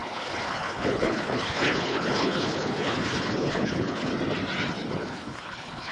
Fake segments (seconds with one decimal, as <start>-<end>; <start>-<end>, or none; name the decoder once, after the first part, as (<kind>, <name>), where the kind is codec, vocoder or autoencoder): 0.0-4.1 (codec, HILCodec); 4.9-5.9